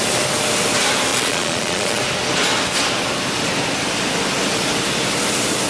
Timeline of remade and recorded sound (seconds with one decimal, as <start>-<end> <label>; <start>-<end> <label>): 0.0-1.1 recorded; 1.1-2.0 remade; 2.0-5.7 recorded